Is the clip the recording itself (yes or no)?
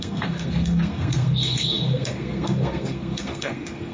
no